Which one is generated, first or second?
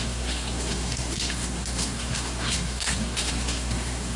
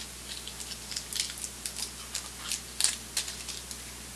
first